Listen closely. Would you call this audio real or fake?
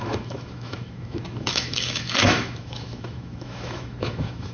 fake